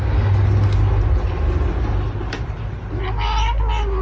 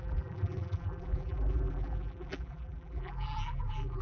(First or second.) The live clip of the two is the first